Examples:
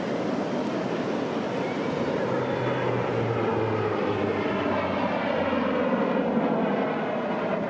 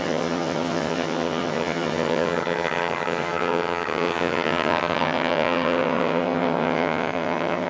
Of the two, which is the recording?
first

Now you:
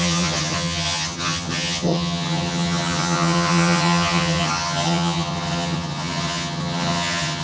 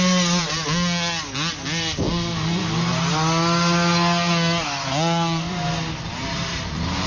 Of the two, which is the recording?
second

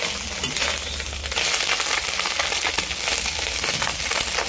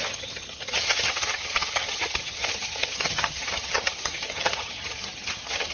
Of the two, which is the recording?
first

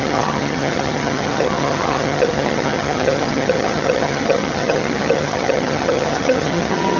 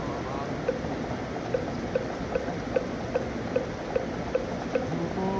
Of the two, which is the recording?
second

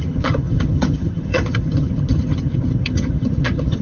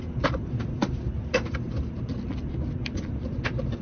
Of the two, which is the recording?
second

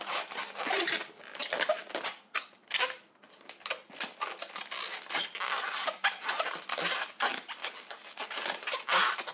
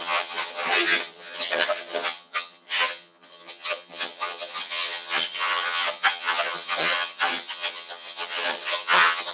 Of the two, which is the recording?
first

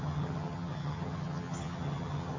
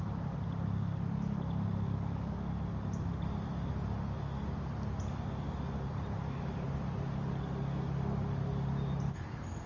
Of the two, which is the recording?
second